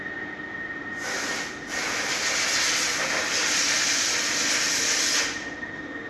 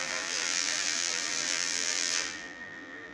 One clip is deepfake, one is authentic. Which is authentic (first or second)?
first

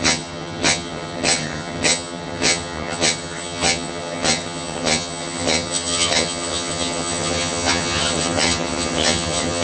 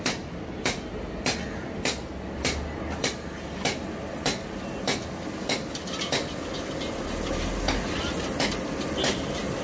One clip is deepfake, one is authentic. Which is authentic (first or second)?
second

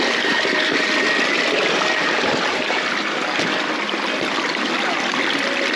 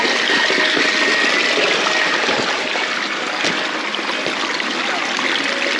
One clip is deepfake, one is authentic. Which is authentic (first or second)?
second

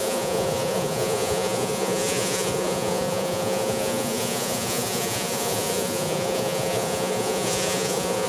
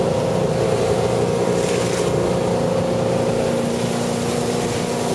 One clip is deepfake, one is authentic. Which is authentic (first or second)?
second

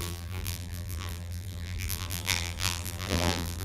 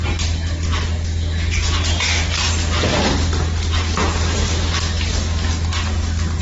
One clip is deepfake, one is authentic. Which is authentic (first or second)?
second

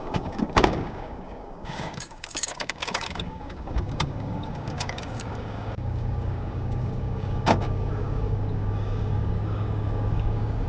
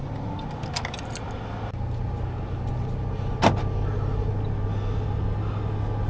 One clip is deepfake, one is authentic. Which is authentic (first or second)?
second